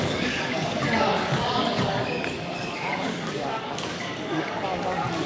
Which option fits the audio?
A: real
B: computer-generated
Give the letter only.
B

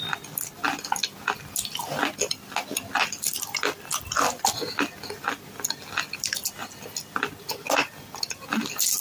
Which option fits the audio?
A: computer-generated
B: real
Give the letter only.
B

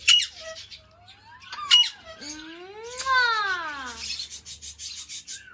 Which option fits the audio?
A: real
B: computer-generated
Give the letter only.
A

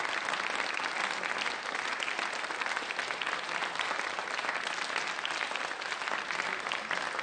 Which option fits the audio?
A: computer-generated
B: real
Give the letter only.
B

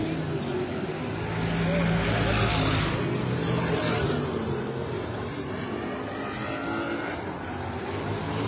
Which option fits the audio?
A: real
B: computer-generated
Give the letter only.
A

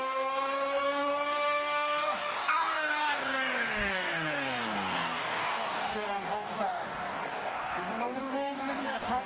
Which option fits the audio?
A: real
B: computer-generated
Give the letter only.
B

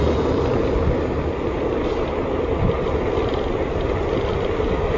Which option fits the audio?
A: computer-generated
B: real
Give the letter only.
B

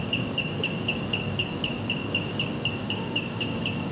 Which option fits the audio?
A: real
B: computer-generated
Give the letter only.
B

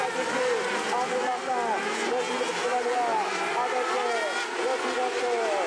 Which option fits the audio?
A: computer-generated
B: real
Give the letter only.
B